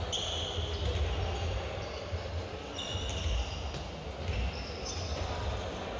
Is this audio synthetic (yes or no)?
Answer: no